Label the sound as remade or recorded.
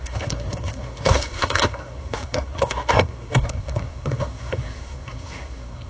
remade